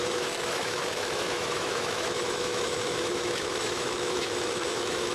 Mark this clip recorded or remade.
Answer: remade